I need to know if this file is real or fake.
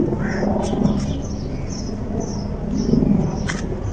real